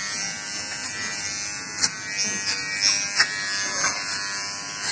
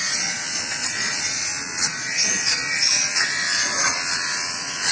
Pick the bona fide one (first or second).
first